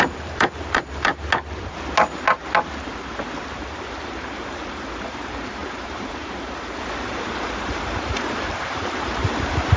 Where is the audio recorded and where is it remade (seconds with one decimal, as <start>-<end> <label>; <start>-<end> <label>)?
0.0-1.1 remade; 1.1-3.6 recorded; 3.6-9.8 remade